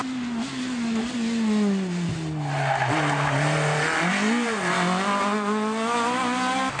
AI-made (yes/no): no